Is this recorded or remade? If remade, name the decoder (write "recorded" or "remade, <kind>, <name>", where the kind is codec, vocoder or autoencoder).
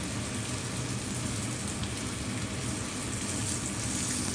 recorded